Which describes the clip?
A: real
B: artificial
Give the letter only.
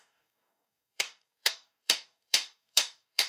B